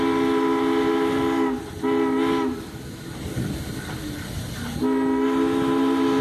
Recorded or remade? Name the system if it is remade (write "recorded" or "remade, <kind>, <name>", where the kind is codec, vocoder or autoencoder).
recorded